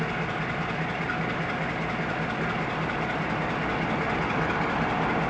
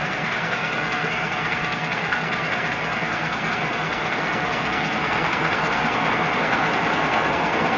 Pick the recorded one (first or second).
first